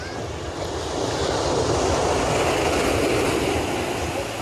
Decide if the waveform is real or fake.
real